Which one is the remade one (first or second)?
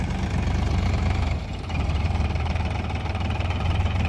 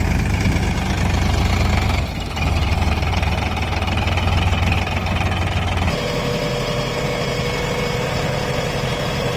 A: first